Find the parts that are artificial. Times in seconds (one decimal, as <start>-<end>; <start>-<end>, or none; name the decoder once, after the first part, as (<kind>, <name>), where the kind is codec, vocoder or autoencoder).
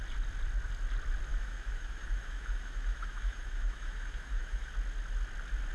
1.3-4.7 (autoencoder, DAC-VAE)